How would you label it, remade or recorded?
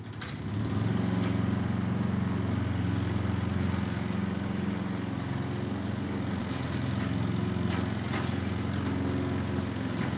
recorded